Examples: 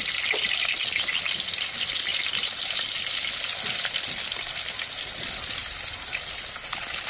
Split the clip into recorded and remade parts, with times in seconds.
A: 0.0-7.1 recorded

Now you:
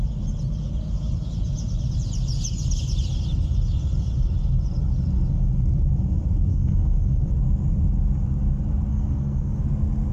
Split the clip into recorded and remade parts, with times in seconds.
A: 0.0-6.5 recorded; 6.5-7.3 remade; 7.3-8.9 recorded; 8.9-9.6 remade; 9.6-10.1 recorded

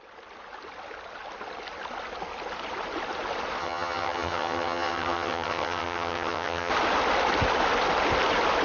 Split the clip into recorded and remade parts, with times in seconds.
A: 0.0-3.6 recorded; 3.6-6.7 remade; 6.7-8.6 recorded

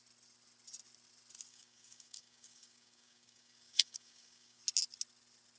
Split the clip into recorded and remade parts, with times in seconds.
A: 0.0-1.5 recorded; 1.5-4.6 remade; 4.6-5.6 recorded

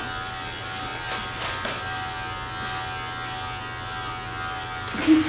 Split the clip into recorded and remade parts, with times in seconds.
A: 0.0-5.3 recorded

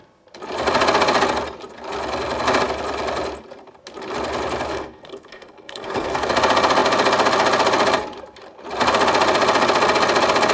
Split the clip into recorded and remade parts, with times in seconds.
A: 0.0-4.7 recorded; 4.7-6.3 remade; 6.3-10.5 recorded

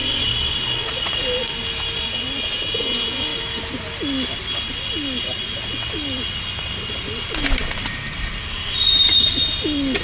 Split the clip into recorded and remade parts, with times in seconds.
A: 0.0-1.2 remade; 1.2-10.0 recorded

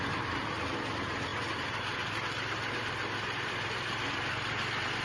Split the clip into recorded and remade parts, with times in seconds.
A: 0.0-5.0 recorded